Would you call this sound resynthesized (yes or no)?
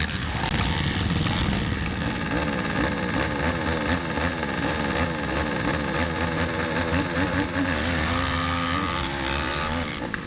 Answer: no